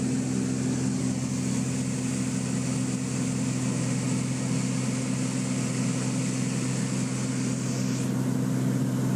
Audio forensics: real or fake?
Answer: real